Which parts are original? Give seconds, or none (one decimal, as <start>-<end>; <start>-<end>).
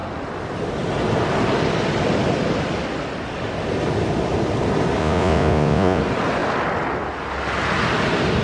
0.0-5.0; 6.0-8.4